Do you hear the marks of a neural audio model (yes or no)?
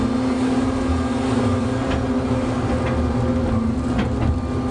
no